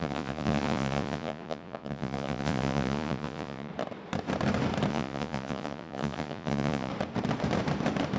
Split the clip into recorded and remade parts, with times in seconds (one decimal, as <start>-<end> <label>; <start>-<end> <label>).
0.0-3.7 remade; 3.7-4.9 recorded; 4.9-6.9 remade; 6.9-8.2 recorded